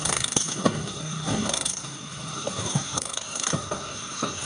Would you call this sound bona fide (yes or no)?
no